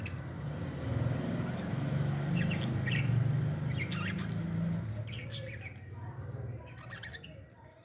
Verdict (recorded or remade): recorded